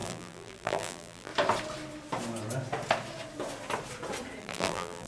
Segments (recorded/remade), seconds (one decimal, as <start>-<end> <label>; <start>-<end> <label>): 0.0-1.3 remade; 1.3-4.4 recorded; 4.4-5.1 remade